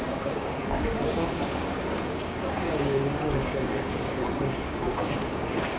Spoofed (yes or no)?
yes